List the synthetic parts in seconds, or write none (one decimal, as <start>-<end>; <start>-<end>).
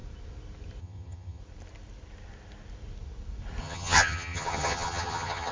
0.8-1.4; 3.6-5.5